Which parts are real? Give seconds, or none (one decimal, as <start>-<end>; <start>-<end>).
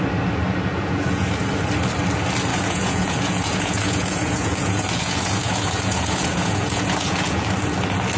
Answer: 0.0-0.7; 1.3-2.5; 7.4-8.2